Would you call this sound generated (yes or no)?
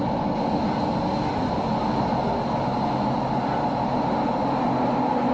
no